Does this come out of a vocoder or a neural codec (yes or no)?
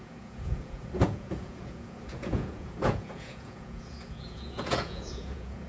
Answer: yes